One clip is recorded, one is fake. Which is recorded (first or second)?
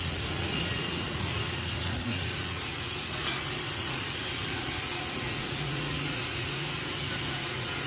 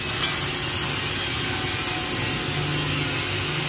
second